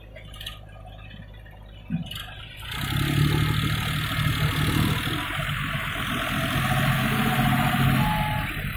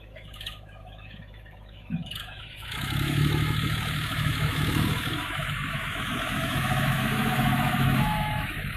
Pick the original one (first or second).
first